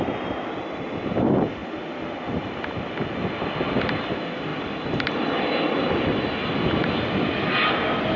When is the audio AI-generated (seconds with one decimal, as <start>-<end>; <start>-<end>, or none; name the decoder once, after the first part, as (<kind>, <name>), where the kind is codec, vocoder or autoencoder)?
none